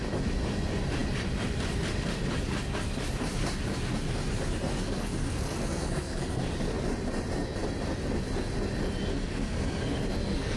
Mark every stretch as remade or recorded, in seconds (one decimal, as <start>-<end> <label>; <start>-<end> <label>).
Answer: 0.0-4.7 recorded; 4.7-6.4 remade; 6.4-9.1 recorded; 9.1-10.6 remade